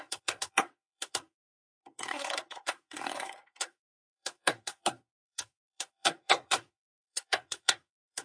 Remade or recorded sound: remade